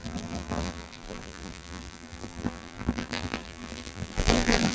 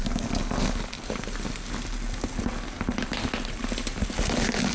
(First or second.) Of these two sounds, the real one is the second